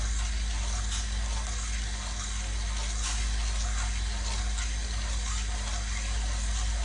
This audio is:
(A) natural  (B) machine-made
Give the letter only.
A